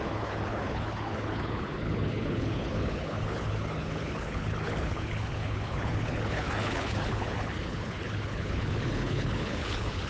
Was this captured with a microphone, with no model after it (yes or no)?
no